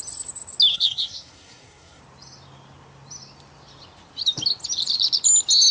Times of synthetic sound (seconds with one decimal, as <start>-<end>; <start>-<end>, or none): 0.7-2.0